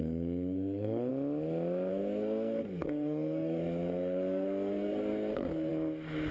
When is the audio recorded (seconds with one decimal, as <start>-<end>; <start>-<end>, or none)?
1.1-1.9; 5.7-6.3